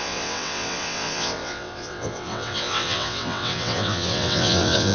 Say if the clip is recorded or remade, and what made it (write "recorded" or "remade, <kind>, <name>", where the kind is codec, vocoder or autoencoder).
remade, vocoder, WaveNeXt